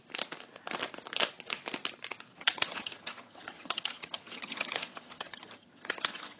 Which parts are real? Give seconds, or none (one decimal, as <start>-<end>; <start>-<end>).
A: 0.0-2.3